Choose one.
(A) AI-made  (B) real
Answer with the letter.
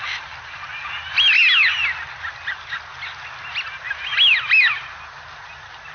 B